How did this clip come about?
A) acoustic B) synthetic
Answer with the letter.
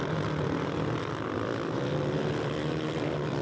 A